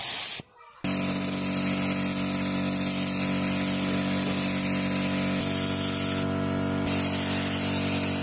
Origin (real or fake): real